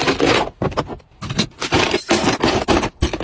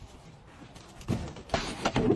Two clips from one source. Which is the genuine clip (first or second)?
first